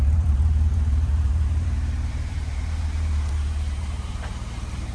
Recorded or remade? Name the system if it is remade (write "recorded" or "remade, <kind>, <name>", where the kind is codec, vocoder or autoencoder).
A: remade, vocoder, BigVGAN v2